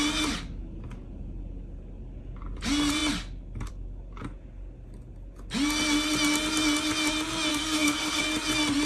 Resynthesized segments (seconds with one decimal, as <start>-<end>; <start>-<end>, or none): 7.5-8.2